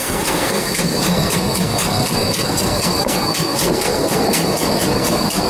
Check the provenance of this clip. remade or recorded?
remade